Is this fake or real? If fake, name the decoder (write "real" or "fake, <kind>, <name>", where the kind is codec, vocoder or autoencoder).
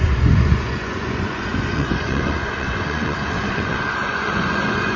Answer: fake, vocoder, Vocos